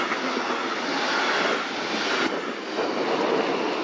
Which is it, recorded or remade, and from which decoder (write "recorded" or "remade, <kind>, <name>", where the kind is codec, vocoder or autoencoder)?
recorded